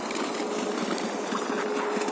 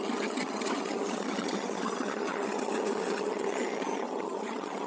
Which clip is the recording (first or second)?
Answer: first